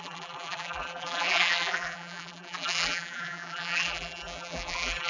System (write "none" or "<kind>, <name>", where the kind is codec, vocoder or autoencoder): vocoder, BigVGAN v2